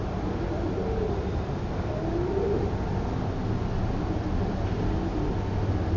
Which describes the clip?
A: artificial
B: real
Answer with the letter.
B